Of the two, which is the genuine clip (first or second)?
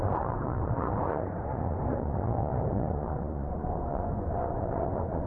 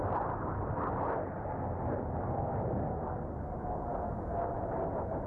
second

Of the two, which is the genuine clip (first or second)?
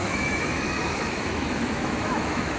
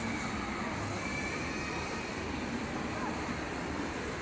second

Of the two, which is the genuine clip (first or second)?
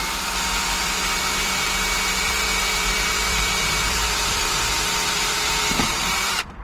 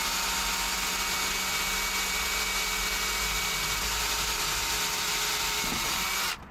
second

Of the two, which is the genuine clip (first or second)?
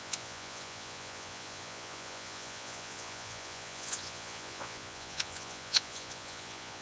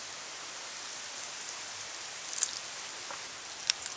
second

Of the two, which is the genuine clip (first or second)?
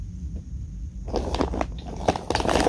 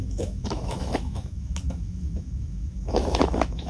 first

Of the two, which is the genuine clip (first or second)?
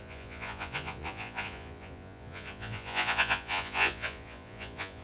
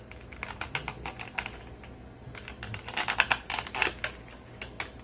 second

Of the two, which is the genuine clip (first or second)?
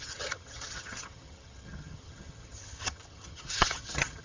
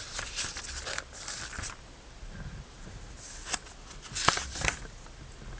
second